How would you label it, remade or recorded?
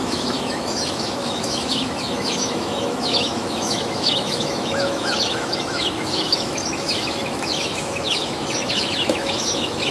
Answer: remade